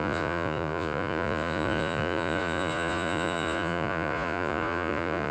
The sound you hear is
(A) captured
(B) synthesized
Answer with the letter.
B